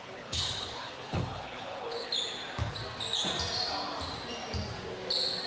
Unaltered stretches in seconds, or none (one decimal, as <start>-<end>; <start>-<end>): 2.1-5.5